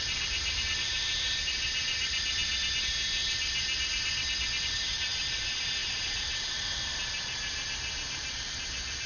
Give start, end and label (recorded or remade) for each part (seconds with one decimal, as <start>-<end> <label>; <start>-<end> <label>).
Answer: 0.0-2.4 remade; 2.4-3.8 recorded; 3.8-9.1 remade